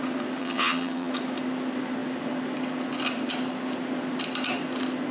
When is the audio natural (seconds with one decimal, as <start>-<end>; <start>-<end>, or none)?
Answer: 0.0-0.4; 1.1-5.1